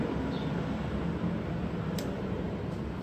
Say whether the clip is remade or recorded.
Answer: recorded